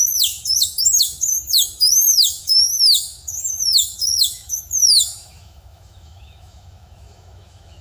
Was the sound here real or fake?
fake